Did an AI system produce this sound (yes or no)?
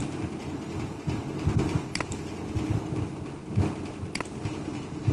no